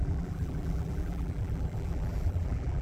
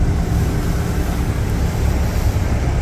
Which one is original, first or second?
second